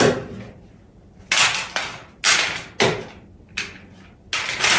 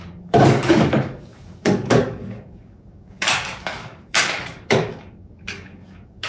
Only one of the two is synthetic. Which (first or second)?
second